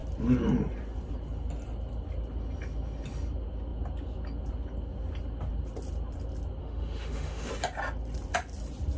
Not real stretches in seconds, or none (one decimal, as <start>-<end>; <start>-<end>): 6.6-7.5